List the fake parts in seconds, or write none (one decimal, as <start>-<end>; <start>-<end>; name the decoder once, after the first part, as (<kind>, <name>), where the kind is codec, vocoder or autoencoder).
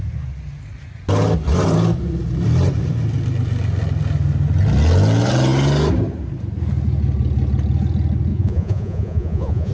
8.3-9.7 (vocoder, Vocos)